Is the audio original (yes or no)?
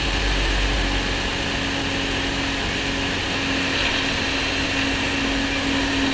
yes